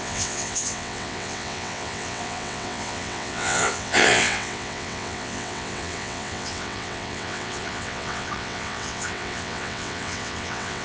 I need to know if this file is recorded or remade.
remade